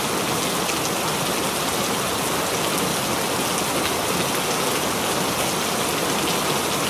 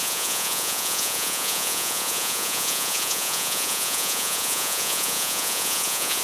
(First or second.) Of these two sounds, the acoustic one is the first